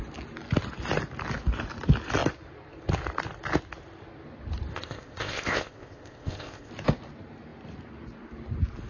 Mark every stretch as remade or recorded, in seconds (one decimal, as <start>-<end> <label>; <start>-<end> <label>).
0.0-4.7 recorded; 4.7-6.7 remade; 6.7-8.9 recorded